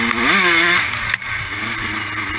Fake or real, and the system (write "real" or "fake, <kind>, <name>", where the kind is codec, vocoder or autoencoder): real